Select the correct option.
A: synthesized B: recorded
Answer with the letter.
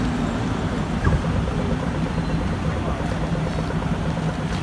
B